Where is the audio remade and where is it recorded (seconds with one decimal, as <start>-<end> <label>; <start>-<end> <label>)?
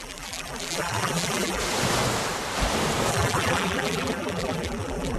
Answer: 0.0-1.6 remade; 1.6-3.1 recorded; 3.1-5.2 remade